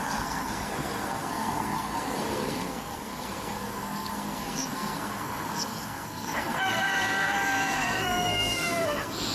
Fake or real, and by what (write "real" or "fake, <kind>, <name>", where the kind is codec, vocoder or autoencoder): fake, codec, SNAC